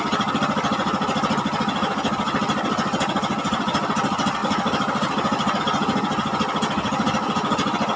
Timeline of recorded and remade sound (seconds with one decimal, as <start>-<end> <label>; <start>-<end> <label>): 0.0-4.4 recorded; 4.4-5.6 remade; 5.6-8.0 recorded